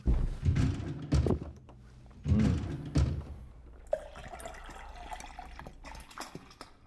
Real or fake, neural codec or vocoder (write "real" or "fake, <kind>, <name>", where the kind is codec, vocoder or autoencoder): real